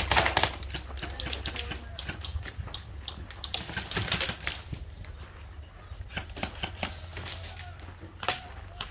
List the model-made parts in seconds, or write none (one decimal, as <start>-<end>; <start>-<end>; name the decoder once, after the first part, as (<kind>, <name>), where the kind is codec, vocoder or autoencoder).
2.3-2.9 (vocoder, BigVGAN v2)